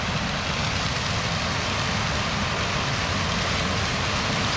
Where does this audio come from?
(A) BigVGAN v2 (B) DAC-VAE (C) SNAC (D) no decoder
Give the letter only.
D